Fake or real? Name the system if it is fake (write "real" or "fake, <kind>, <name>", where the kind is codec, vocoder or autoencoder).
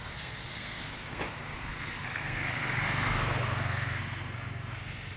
fake, codec, SNAC